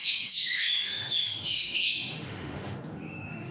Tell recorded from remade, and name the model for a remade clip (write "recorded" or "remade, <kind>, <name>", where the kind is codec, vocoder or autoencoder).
remade, autoencoder, DAC-VAE